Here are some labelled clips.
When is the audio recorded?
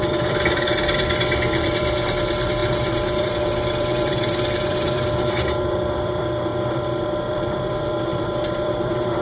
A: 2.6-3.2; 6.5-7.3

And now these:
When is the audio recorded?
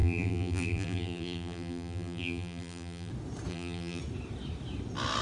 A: 3.1-3.5; 4.0-5.2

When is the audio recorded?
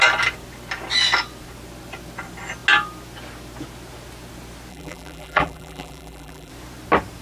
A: 0.0-4.7; 6.5-7.2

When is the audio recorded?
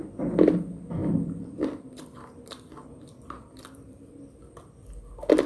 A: 0.0-1.0; 4.1-5.5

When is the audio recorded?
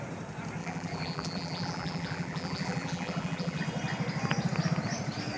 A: 0.0-0.6; 3.6-5.4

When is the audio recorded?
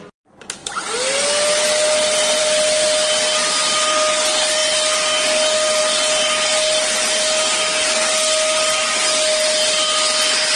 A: 0.0-10.6